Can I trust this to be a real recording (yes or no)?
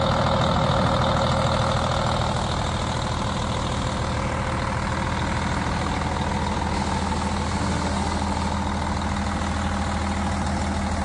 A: yes